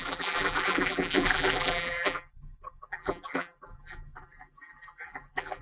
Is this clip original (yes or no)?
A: no